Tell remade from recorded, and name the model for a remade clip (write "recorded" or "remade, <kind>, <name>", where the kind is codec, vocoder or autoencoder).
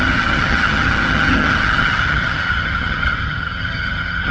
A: remade, vocoder, HiFi-GAN